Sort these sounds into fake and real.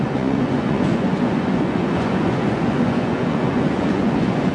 fake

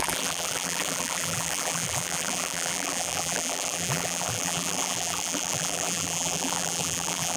fake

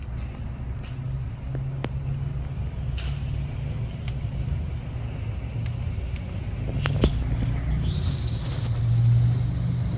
real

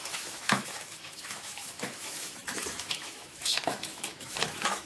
fake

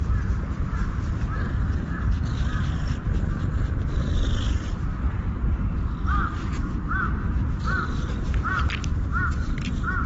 real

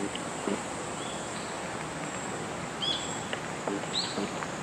real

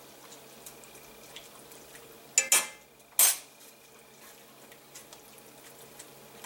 real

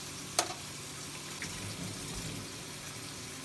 real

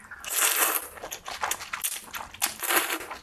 real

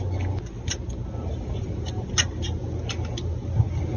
real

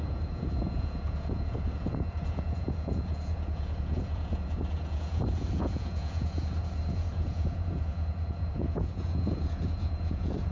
fake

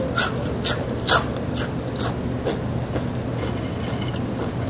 real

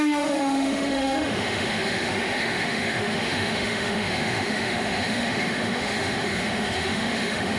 fake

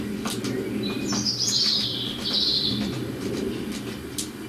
fake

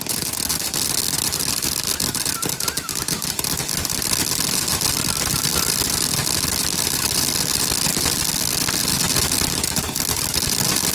real